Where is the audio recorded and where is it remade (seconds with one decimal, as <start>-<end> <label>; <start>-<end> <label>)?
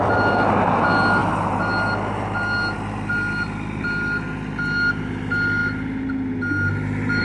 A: 0.0-7.2 recorded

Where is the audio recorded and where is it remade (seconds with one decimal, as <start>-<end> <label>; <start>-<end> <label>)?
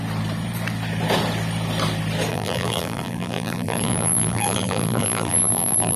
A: 0.0-2.3 recorded; 2.3-6.0 remade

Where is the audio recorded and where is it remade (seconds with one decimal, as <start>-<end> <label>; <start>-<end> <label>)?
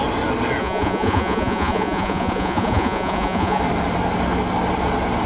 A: 0.0-0.6 recorded; 0.6-3.6 remade; 3.6-5.3 recorded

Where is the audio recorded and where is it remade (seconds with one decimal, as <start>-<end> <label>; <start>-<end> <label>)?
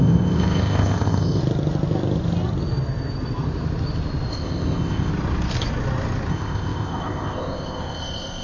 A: 0.0-1.4 remade; 1.4-4.3 recorded; 4.3-5.1 remade; 5.1-6.3 recorded; 6.3-8.4 remade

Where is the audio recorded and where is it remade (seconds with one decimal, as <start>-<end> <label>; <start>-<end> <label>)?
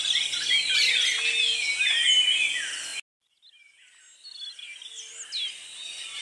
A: 0.0-6.2 recorded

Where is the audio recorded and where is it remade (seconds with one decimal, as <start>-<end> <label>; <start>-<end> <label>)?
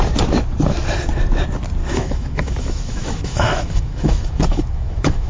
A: 0.0-1.8 recorded; 1.8-5.3 remade